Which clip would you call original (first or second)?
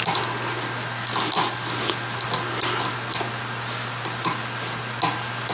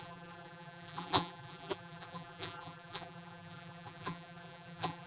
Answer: first